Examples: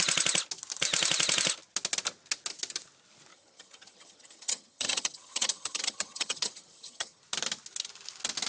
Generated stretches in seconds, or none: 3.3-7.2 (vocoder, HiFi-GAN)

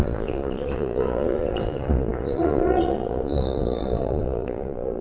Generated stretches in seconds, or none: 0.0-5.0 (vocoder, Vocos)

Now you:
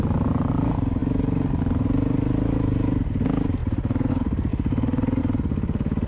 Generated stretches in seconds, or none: 4.5-5.2 (vocoder, BigVGAN v2)

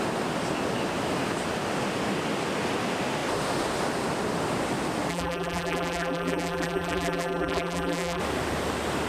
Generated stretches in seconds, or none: 5.1-8.2 (vocoder, BigVGAN v2)

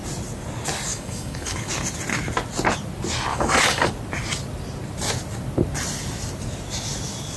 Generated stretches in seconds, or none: 0.9-1.7 (codec, DAC); 3.3-3.9

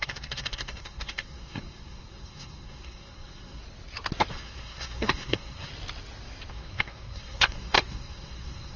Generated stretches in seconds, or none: 0.0-3.6 (codec, SNAC); 4.3-5.7; 6.5-8.8